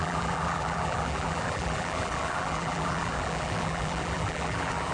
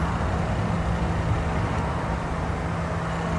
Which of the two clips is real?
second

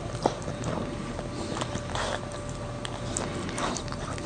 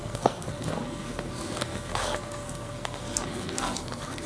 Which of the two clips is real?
first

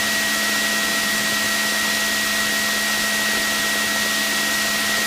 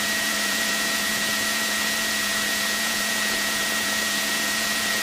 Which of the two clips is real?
first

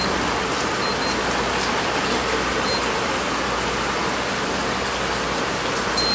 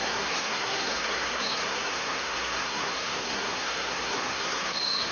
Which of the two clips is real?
first